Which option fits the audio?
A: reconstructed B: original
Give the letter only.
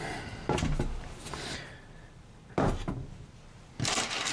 B